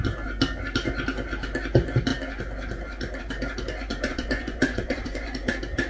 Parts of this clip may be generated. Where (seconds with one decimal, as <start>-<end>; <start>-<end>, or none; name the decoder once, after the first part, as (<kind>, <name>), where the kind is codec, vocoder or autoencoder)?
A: 3.9-5.5 (vocoder, Vocos)